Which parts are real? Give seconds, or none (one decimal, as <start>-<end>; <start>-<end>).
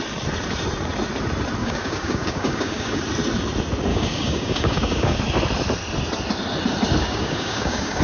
0.0-1.6; 3.0-3.9; 5.2-7.0